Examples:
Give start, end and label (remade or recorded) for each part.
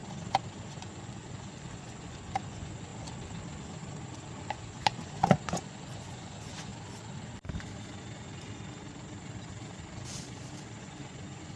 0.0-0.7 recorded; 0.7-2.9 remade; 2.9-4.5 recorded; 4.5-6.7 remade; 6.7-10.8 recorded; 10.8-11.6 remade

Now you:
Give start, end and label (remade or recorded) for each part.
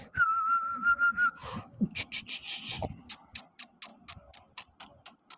0.0-1.4 recorded; 1.4-2.0 remade; 2.0-5.4 recorded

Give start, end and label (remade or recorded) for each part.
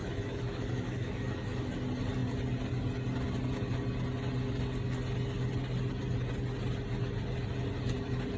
0.0-1.7 remade; 1.7-8.4 recorded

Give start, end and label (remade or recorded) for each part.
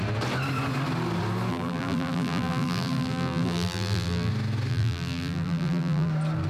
0.0-1.5 recorded; 1.5-4.3 remade; 4.3-4.7 recorded; 4.7-6.1 remade; 6.1-6.5 recorded